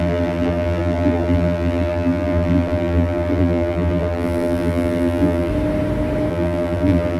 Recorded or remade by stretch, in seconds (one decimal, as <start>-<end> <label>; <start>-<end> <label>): 0.0-5.5 remade; 5.5-6.3 recorded; 6.3-7.2 remade